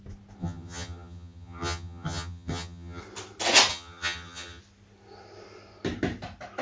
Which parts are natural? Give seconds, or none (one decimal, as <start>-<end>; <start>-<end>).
0.0-0.4; 3.0-3.7; 4.6-6.6